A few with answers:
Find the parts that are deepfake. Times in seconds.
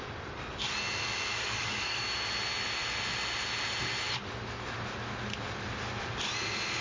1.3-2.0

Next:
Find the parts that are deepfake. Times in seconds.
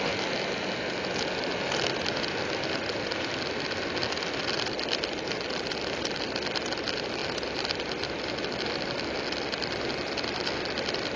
none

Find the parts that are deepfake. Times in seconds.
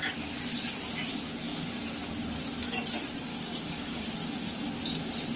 3.3-4.0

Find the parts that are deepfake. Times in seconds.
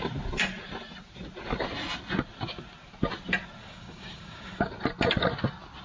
3.6-4.7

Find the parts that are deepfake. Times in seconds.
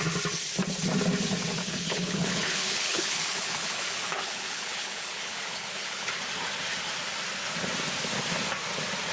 1.6-6.1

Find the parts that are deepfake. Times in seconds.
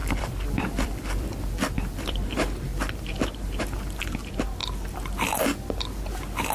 0.0-2.2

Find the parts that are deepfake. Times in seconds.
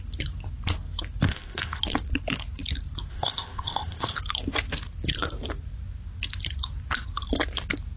1.3-1.8; 3.1-4.2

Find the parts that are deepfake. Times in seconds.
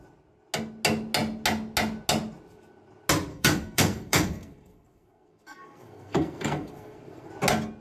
3.3-7.3